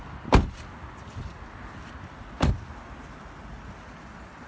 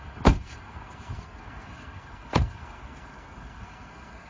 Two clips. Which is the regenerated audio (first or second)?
second